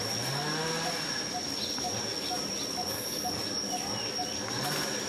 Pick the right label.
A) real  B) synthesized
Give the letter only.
A